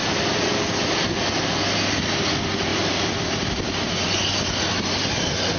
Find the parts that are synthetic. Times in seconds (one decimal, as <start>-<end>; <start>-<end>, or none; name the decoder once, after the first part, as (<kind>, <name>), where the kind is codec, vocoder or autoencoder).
0.0-0.6 (vocoder, BigVGAN v2); 2.7-4.6